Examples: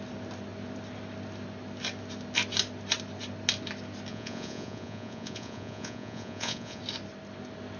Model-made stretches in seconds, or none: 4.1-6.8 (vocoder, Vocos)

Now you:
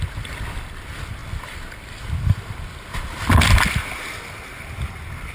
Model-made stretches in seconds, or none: none

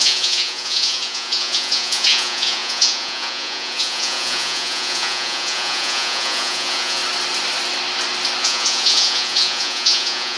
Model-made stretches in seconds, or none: 0.0-7.0 (vocoder, Vocos); 8.4-10.4

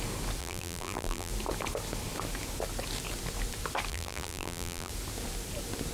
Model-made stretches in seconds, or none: 0.4-1.3 (vocoder, BigVGAN v2); 3.9-4.9